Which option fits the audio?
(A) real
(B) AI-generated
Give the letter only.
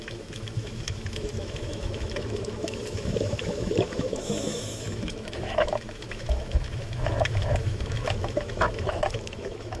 B